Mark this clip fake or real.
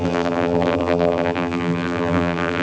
fake